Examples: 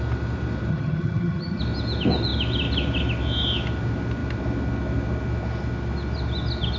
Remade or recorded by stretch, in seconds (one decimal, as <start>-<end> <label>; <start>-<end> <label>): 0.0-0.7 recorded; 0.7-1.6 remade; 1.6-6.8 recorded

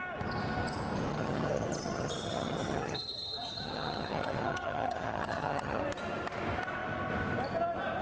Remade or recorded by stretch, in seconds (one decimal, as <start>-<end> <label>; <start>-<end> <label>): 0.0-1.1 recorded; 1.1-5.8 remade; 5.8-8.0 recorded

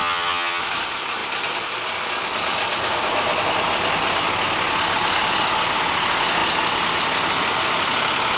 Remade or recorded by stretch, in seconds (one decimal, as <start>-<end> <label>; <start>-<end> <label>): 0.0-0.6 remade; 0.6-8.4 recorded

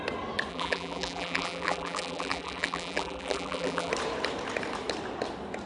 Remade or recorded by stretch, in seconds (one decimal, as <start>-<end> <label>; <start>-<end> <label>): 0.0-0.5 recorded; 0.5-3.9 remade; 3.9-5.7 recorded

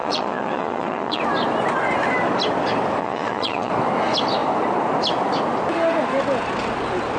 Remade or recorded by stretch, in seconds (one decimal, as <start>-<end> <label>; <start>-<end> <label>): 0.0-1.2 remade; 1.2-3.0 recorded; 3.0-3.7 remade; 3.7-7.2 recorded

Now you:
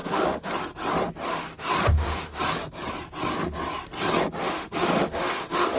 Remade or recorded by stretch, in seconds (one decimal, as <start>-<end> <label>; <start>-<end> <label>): 0.0-0.5 remade; 0.5-1.3 recorded; 1.3-2.4 remade; 2.4-4.4 recorded; 4.4-5.8 remade

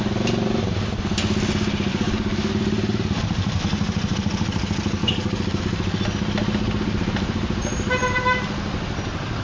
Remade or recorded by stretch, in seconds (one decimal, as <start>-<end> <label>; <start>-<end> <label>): 0.0-1.9 recorded; 1.9-2.5 remade; 2.5-5.0 recorded; 5.0-5.6 remade; 5.6-9.4 recorded